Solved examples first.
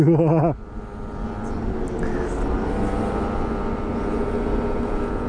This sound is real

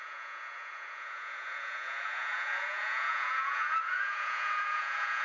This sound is fake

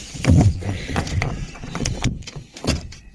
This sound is fake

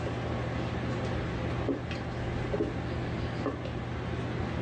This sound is real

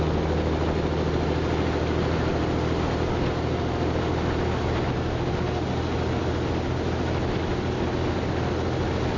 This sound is real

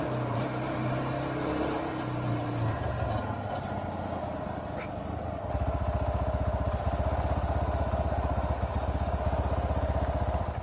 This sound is real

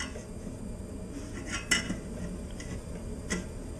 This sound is real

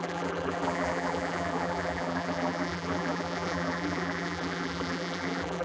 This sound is fake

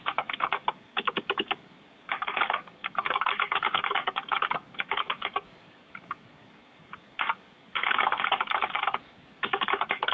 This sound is fake